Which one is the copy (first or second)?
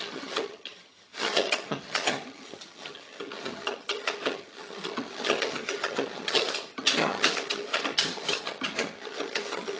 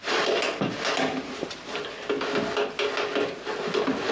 first